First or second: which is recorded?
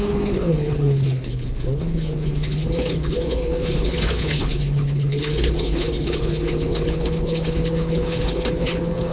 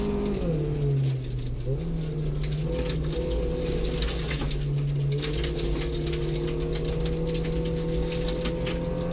second